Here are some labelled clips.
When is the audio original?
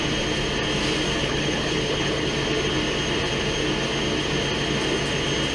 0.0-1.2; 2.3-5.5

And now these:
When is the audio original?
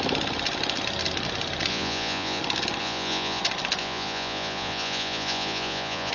0.0-1.7; 2.4-2.8; 3.4-3.8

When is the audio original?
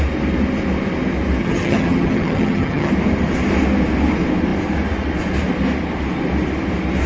0.0-1.4; 2.9-7.1